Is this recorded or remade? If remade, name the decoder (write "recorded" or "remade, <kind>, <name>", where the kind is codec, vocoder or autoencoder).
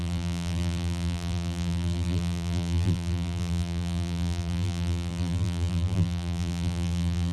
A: remade, vocoder, BigVGAN v2